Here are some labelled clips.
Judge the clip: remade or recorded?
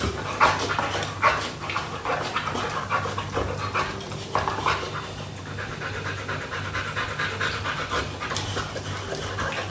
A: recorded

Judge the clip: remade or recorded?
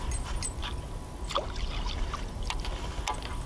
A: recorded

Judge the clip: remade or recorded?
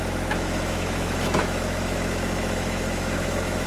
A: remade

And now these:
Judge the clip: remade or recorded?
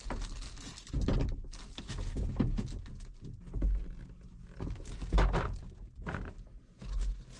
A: recorded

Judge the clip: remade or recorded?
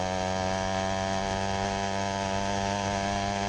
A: recorded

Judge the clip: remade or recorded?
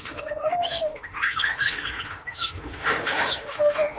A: remade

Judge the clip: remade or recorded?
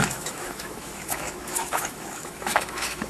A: remade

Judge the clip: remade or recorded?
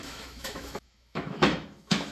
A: remade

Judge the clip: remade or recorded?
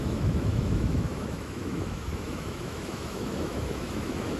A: remade